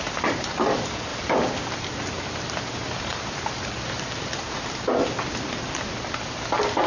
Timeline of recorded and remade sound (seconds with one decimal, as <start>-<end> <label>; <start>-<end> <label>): 0.0-6.9 recorded